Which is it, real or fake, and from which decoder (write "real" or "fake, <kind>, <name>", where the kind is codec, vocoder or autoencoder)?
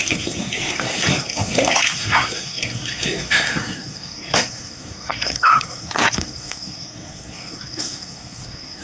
fake, codec, SNAC